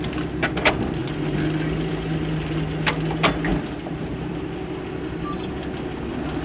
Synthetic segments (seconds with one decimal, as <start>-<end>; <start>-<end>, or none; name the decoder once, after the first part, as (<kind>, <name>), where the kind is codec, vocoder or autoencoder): 3.5-4.7 (vocoder, BigVGAN v2)